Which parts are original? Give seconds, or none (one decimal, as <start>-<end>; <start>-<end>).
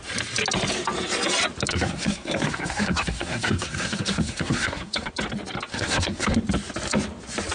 0.0-1.7; 5.1-5.7; 6.4-7.5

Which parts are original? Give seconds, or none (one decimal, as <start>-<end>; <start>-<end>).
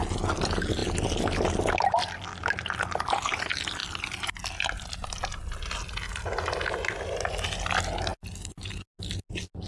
0.0-9.7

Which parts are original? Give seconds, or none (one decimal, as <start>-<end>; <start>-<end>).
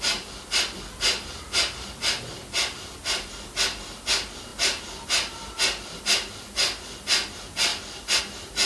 0.0-8.7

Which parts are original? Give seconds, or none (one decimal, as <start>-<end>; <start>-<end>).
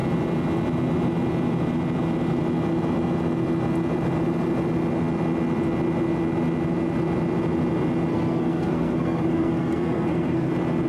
0.0-8.1; 10.5-10.9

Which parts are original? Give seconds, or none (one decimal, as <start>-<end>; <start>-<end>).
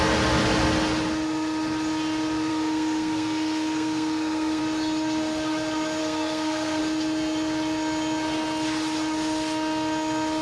0.0-2.5; 4.6-6.0; 6.8-10.4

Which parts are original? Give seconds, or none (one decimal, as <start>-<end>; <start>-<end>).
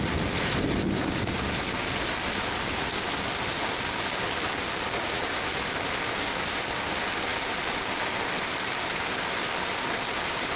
0.0-10.6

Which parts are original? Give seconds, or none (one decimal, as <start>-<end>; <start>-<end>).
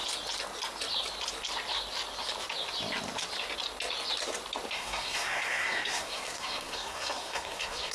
0.0-4.7